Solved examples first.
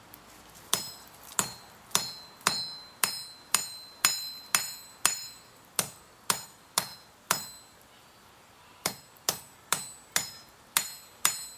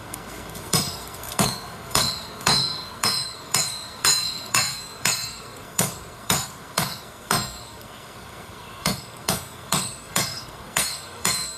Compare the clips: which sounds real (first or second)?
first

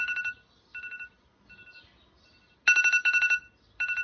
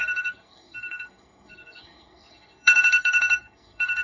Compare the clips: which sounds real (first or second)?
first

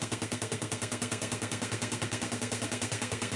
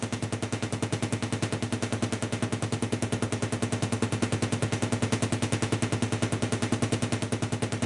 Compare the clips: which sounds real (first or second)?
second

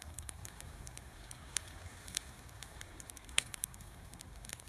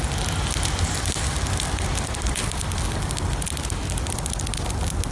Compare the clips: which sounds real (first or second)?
second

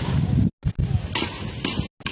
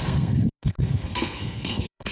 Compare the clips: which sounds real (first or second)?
first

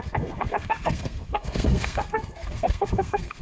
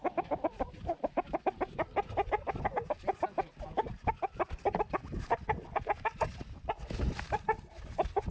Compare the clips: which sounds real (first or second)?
second